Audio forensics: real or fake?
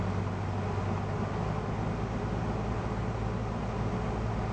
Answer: real